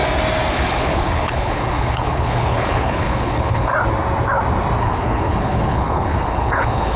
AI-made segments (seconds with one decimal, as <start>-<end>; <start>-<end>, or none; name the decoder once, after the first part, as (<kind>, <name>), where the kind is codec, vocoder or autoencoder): 0.5-3.7 (codec, HILCodec); 4.8-7.0